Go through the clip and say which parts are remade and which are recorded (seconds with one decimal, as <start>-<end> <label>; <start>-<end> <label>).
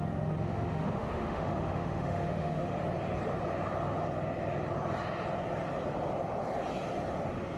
0.0-2.8 remade; 2.8-7.6 recorded